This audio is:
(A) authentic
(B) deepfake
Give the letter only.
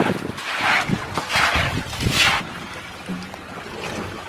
A